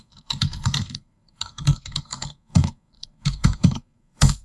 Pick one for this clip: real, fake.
fake